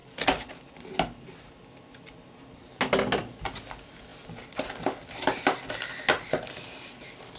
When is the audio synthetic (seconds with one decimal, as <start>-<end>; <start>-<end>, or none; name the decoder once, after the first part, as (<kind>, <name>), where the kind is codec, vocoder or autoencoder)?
none